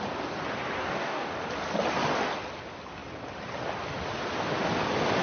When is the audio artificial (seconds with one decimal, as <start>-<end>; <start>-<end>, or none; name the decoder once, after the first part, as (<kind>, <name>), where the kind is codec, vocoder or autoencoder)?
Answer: 0.8-1.3 (codec, DAC)